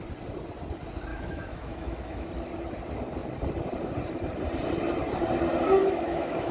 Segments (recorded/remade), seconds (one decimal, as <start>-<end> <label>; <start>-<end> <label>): 0.0-1.1 recorded; 1.1-2.3 remade; 2.3-5.8 recorded; 5.8-6.5 remade